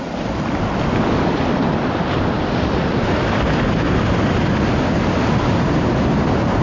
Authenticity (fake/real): real